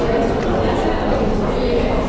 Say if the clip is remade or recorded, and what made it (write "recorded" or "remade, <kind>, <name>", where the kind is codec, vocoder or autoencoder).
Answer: recorded